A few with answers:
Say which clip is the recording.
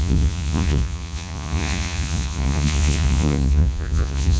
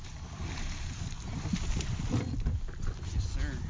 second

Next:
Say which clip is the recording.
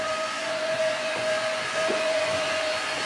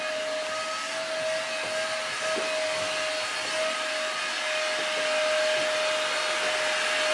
second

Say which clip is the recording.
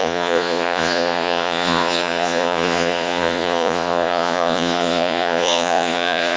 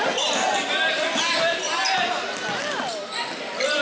second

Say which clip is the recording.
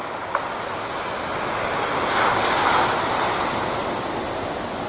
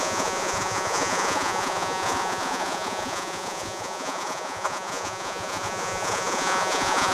first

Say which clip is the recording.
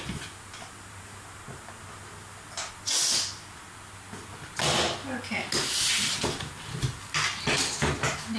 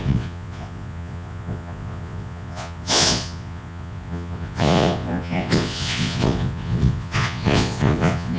first